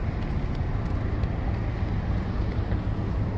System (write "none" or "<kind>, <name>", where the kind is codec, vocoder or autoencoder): none